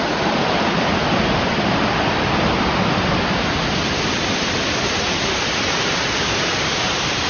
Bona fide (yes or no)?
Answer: no